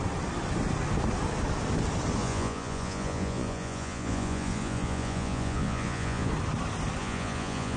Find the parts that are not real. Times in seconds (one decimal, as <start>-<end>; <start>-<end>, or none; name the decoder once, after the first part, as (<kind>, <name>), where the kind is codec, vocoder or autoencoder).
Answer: 2.2-6.3 (vocoder, Vocos); 7.0-7.8